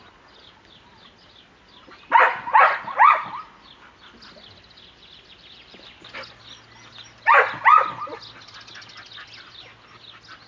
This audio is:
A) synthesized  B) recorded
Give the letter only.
B